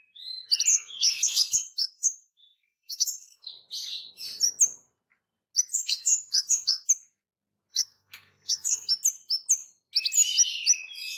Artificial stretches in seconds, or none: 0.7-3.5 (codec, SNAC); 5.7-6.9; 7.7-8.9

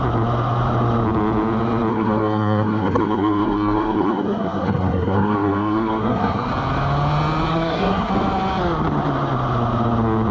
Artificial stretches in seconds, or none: 1.9-6.5 (codec, SNAC); 7.5-8.1

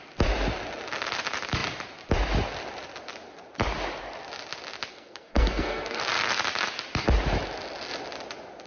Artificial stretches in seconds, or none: 4.9-6.0 (codec, SNAC)

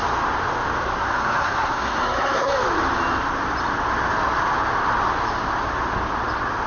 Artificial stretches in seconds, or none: 1.0-2.5 (codec, SNAC)

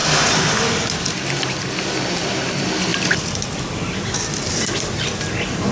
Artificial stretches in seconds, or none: none

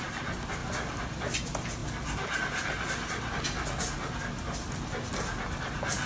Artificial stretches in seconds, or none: none

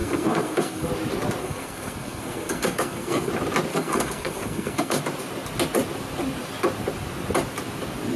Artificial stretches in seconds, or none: 0.0-0.9 (codec, SNAC); 1.4-3.3; 3.7-5.0